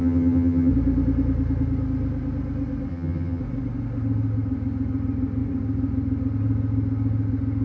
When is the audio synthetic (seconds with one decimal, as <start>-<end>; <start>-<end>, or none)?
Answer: 0.0-0.7; 2.9-3.4